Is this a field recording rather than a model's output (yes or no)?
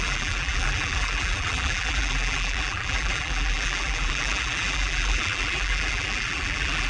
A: no